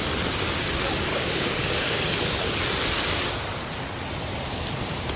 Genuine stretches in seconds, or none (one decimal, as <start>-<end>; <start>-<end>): 0.0-1.1; 2.1-5.2